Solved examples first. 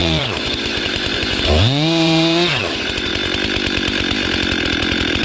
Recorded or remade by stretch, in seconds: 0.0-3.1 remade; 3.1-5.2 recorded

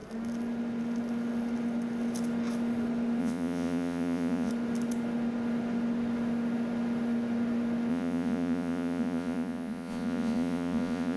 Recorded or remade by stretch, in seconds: 0.0-3.2 recorded; 3.2-4.5 remade; 4.5-7.9 recorded; 7.9-11.2 remade

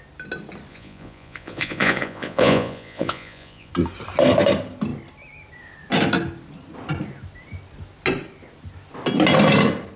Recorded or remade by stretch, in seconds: 0.0-0.7 recorded; 0.7-3.7 remade; 3.7-10.0 recorded

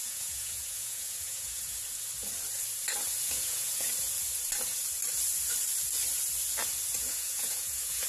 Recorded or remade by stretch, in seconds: 0.0-1.8 remade; 1.8-3.2 recorded; 3.2-3.9 remade; 3.9-6.9 recorded; 6.9-8.1 remade